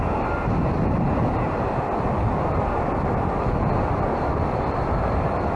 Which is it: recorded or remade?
recorded